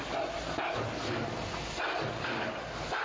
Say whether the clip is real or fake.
real